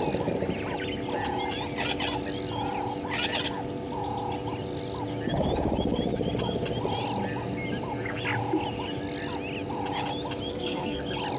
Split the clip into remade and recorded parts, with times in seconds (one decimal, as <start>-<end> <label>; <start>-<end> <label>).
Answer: 0.0-10.5 recorded; 10.5-11.0 remade; 11.0-11.4 recorded